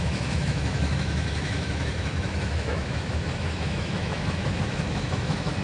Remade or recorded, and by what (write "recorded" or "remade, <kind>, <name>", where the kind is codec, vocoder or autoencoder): remade, autoencoder, DAC-VAE